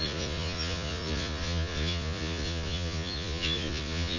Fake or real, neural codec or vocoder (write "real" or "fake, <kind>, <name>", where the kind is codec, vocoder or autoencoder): fake, vocoder, Vocos